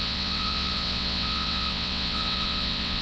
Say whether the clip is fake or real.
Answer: fake